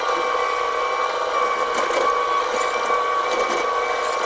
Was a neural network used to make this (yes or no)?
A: no